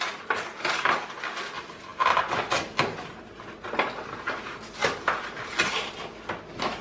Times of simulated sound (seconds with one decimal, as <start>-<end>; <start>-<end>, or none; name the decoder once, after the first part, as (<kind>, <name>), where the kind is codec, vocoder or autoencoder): none

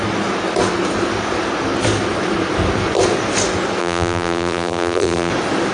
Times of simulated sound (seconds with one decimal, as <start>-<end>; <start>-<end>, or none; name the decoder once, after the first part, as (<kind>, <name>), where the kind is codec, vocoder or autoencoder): 3.8-5.3 (vocoder, BigVGAN v2)

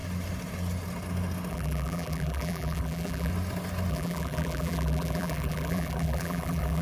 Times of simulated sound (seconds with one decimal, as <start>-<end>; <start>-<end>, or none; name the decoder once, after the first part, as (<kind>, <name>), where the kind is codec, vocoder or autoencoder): 1.5-3.3 (vocoder, BigVGAN v2); 3.9-6.8

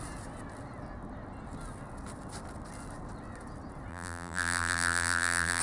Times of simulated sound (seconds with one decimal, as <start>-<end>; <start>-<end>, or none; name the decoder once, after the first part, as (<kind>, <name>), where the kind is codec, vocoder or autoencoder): 3.9-5.6 (vocoder, BigVGAN v2)